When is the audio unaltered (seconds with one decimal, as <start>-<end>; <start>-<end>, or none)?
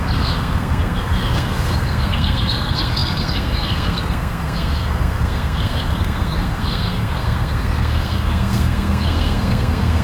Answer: none